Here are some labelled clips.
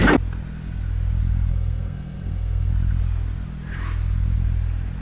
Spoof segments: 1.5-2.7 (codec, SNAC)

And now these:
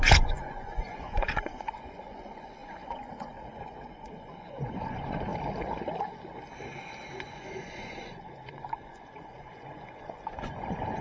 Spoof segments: 0.0-5.3 (vocoder, Vocos); 7.2-11.0